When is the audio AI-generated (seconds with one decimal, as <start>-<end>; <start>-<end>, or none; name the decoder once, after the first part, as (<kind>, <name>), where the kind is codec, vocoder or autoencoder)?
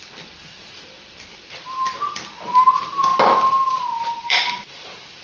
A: 0.0-3.1 (vocoder, BigVGAN v2); 4.0-5.2